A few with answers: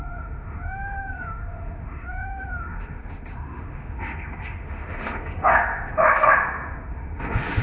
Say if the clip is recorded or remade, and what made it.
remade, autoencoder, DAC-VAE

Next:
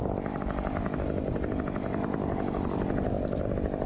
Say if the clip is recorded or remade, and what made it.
recorded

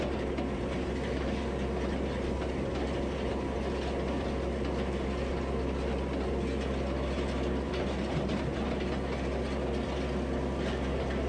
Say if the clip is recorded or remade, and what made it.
recorded